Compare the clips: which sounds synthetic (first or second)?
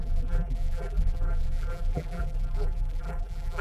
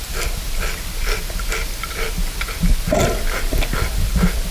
first